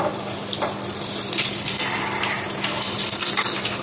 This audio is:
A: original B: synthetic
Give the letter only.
A